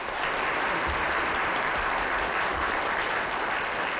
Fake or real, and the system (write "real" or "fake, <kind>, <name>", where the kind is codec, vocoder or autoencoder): real